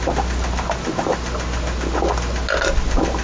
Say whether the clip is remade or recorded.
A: recorded